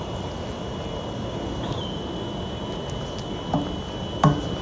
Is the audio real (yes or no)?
yes